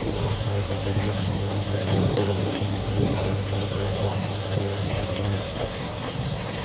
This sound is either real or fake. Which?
fake